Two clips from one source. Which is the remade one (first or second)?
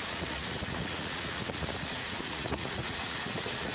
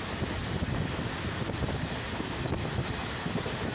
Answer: first